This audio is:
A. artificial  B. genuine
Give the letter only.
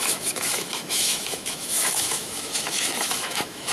A